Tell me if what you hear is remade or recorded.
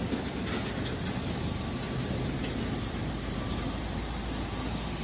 recorded